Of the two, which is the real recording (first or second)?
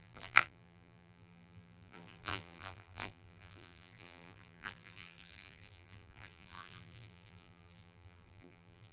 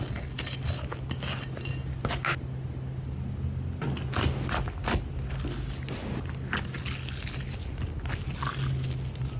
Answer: second